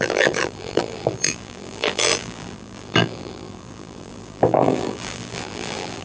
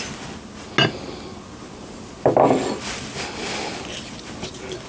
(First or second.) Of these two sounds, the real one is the second